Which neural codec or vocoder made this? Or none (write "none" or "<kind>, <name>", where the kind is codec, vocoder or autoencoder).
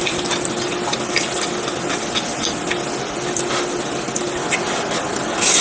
none